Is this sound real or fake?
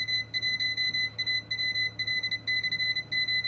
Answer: real